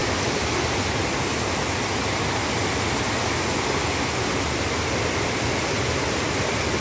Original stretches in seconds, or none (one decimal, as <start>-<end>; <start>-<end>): 0.0-6.8